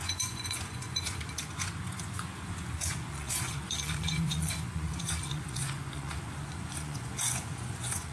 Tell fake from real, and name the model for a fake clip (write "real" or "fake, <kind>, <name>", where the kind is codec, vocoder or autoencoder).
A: fake, vocoder, Vocos